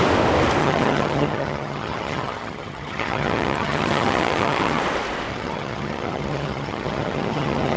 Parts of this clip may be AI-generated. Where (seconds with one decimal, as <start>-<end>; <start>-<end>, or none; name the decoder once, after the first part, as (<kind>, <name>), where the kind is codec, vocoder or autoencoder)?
0.6-4.8 (vocoder, HiFi-GAN); 5.3-7.8